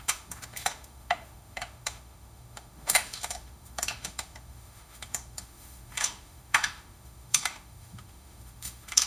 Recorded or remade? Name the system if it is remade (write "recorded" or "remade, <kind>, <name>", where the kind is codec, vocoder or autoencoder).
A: remade, autoencoder, DAC-VAE